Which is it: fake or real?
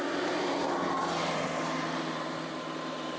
real